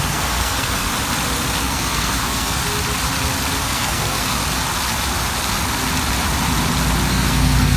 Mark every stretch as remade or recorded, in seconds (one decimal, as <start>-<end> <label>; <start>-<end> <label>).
0.0-0.9 remade; 0.9-1.6 recorded; 1.6-2.6 remade; 2.6-3.6 recorded; 3.6-4.4 remade; 4.4-7.1 recorded; 7.1-7.8 remade